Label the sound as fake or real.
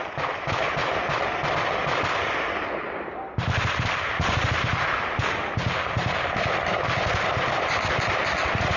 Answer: real